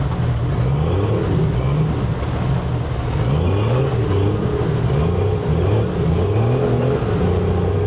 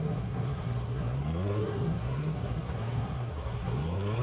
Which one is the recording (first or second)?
first